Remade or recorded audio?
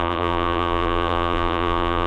remade